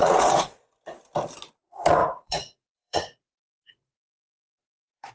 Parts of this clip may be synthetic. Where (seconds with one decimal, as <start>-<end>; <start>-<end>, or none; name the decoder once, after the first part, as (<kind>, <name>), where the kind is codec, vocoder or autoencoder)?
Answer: 0.0-0.7 (vocoder, Vocos); 2.0-5.1